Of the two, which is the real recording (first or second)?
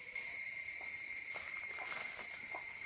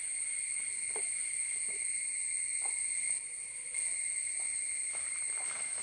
second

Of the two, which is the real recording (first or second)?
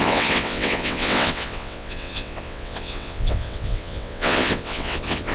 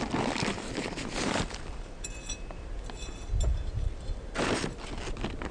second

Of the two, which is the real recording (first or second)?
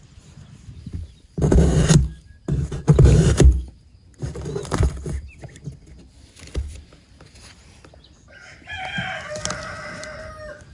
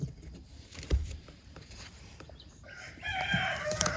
first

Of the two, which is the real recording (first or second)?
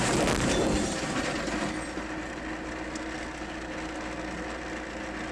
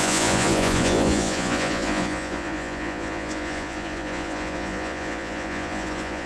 first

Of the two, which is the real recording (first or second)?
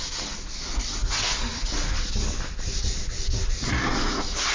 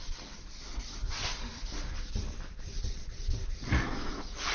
first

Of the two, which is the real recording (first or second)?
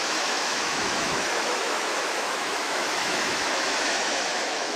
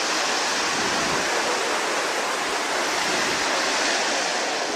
second